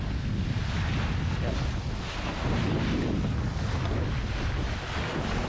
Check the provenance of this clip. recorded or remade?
recorded